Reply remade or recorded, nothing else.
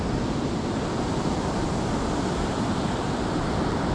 recorded